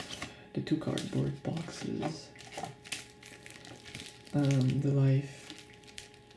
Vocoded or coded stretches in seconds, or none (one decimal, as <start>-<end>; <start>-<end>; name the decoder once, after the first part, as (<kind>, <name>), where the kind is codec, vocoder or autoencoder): none